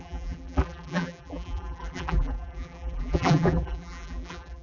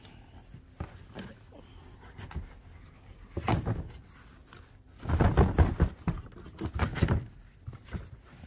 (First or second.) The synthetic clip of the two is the first